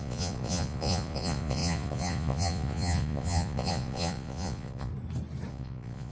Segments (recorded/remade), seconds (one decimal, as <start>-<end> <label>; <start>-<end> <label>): 0.0-4.9 remade; 4.9-5.5 recorded; 5.5-6.1 remade